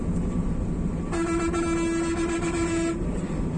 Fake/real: real